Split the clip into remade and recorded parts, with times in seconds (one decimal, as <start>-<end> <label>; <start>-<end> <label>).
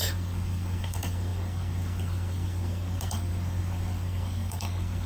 0.0-5.1 remade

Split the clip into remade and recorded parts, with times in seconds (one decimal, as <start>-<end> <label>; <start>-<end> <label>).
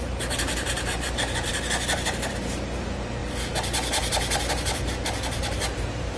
0.0-3.2 remade; 3.2-4.5 recorded; 4.5-6.2 remade